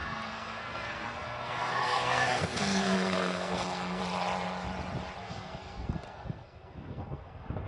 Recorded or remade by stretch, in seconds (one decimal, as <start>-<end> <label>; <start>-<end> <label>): 0.0-4.0 remade; 4.0-5.2 recorded; 5.2-7.7 remade